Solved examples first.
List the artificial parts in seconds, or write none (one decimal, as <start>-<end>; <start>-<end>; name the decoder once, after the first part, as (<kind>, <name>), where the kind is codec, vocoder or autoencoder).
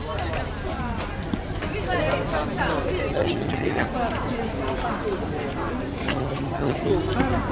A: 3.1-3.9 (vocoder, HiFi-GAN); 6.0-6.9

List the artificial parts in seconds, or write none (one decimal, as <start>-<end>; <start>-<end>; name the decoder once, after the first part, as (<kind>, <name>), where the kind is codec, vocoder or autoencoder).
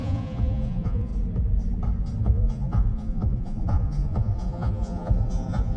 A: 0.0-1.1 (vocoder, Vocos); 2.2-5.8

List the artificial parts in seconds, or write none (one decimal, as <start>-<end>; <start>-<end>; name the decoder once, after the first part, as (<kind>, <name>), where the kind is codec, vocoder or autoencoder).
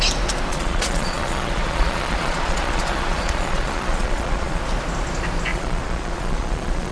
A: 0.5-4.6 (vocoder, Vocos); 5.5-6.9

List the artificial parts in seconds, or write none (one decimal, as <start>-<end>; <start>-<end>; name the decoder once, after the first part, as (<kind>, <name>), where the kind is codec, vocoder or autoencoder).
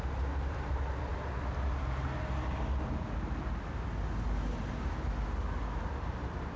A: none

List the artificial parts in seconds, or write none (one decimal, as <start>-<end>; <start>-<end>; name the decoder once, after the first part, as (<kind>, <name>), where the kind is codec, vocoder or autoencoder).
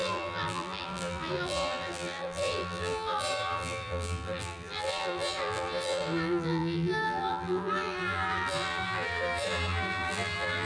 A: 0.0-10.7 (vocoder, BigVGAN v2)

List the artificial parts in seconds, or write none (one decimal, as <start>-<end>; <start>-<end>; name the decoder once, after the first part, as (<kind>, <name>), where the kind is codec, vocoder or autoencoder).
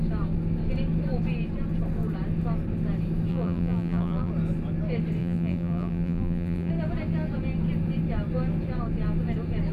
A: 3.3-4.3 (vocoder, BigVGAN v2); 5.2-6.7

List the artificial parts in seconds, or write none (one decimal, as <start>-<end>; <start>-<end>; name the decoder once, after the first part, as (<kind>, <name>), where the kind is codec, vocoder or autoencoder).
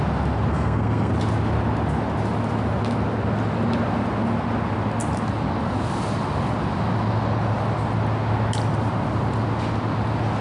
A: 0.5-1.1 (codec, SNAC)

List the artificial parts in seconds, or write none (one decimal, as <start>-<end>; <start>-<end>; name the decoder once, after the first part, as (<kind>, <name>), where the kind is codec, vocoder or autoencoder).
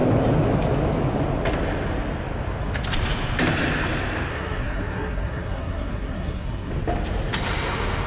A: 4.3-6.7 (codec, SNAC)